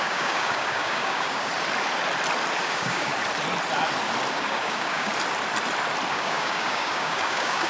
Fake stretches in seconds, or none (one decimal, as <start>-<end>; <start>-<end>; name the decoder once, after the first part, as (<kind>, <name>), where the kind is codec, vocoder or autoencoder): 0.0-1.5 (codec, DAC); 2.6-3.1; 4.3-5.1; 6.1-7.7